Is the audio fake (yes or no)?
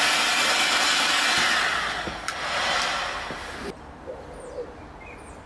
no